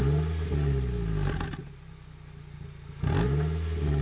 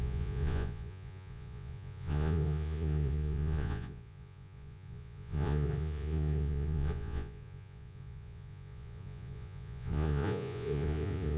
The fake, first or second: second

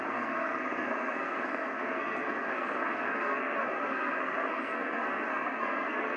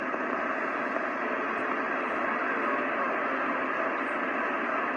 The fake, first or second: first